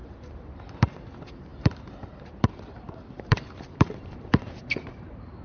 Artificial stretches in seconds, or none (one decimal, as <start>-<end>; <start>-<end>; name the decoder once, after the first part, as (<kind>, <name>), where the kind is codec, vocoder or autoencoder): 0.0-5.4 (vocoder, BigVGAN v2)